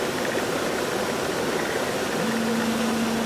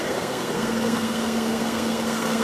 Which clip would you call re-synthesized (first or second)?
second